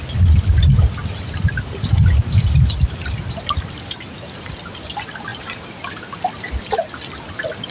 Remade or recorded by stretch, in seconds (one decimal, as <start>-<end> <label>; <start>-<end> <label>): 0.0-7.7 recorded